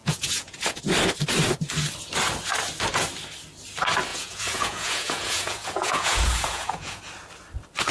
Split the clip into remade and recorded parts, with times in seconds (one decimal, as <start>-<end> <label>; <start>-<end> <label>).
0.0-0.8 remade; 0.8-4.1 recorded; 4.1-7.0 remade; 7.0-7.9 recorded